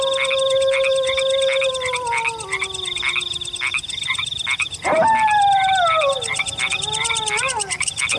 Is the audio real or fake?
real